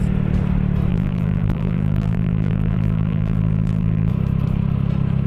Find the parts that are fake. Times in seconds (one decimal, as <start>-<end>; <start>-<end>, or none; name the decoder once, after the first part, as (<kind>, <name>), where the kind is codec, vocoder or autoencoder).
0.9-4.1 (vocoder, BigVGAN v2)

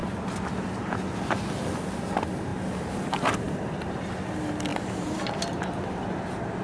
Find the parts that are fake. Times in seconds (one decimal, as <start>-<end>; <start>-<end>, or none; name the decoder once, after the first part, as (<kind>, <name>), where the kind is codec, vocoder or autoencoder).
4.7-5.4 (vocoder, BigVGAN v2)

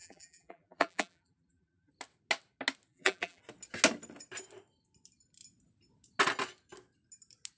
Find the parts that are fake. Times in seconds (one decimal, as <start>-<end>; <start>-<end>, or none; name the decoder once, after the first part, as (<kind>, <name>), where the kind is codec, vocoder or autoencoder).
0.0-1.9 (vocoder, BigVGAN v2); 2.9-3.4

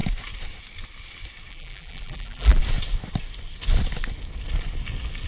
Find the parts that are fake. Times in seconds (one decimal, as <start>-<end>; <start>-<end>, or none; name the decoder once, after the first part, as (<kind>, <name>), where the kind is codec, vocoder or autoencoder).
1.5-2.6 (vocoder, BigVGAN v2)

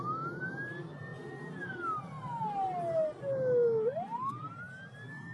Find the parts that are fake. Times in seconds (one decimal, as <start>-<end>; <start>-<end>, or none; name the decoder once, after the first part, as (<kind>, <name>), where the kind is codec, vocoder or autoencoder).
none

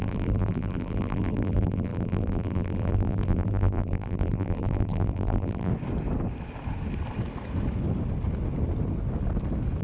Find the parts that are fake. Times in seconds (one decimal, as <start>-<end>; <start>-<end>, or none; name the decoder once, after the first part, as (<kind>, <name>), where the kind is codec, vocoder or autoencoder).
0.0-5.7 (vocoder, BigVGAN v2)